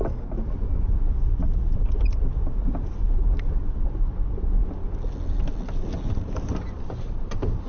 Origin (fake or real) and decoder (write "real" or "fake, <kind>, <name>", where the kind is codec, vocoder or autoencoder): real